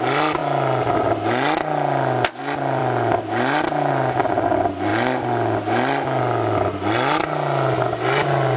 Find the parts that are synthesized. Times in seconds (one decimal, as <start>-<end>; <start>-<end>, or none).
none